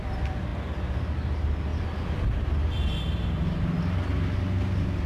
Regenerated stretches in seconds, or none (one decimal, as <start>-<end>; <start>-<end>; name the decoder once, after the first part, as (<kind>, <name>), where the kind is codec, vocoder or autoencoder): none